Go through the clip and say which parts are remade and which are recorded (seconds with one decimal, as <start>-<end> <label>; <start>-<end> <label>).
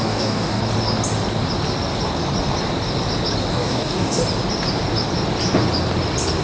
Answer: 0.0-0.6 remade; 0.6-3.5 recorded; 3.5-4.2 remade; 4.2-6.4 recorded